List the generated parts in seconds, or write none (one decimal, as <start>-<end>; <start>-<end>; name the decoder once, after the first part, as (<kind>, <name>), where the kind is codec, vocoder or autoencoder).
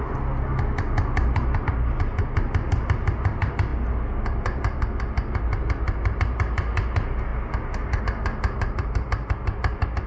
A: none